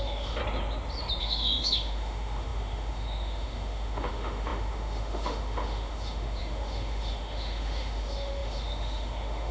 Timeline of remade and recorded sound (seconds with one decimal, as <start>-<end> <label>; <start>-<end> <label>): 0.0-0.4 remade; 0.4-1.2 recorded; 1.2-9.5 remade